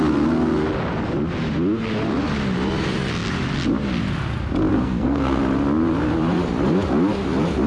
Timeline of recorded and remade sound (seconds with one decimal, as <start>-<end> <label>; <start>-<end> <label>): 0.0-4.7 recorded; 4.7-5.4 remade; 5.4-7.7 recorded